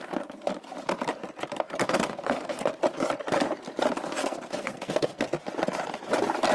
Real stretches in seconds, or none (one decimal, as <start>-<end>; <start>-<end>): 0.0-1.8; 2.6-4.2; 5.2-6.5